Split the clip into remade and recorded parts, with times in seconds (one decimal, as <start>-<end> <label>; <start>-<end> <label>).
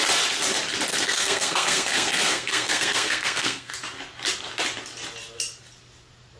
0.0-0.9 recorded; 0.9-3.7 remade; 3.7-6.4 recorded